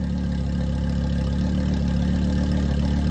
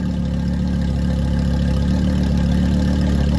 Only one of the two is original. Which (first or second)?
first